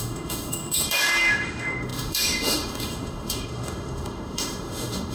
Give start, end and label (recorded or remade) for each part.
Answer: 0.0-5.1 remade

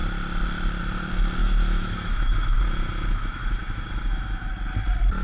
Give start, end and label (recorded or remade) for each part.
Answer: 0.0-1.4 recorded; 1.4-4.5 remade; 4.5-5.2 recorded

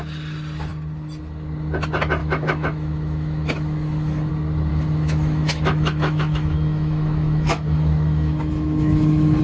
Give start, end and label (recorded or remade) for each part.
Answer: 0.0-2.2 recorded; 2.2-4.3 remade; 4.3-4.7 recorded; 4.7-9.4 remade

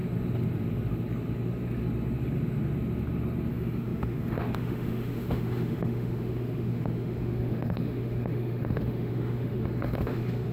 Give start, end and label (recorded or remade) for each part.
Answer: 0.0-3.5 recorded; 3.5-10.5 remade

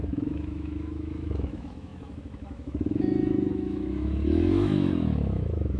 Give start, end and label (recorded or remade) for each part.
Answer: 0.0-5.8 remade

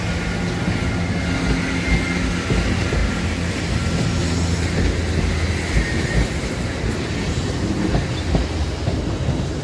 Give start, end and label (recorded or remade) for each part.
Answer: 0.0-9.6 recorded

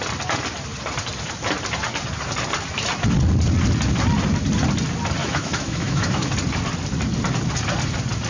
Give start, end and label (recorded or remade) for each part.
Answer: 0.0-5.2 recorded; 5.2-6.3 remade; 6.3-8.3 recorded